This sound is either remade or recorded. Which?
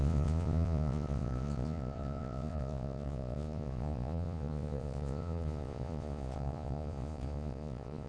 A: remade